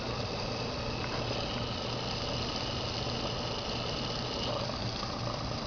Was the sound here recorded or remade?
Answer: recorded